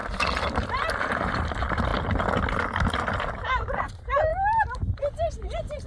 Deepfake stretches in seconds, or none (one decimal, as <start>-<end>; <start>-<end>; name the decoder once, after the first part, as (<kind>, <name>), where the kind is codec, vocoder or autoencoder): 1.0-1.9 (vocoder, BigVGAN v2); 3.2-5.9